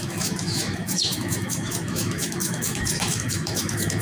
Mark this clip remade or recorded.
remade